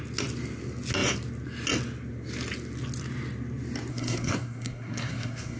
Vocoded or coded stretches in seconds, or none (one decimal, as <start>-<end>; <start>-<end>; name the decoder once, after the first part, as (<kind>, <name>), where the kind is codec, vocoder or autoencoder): 3.9-5.6 (codec, SNAC)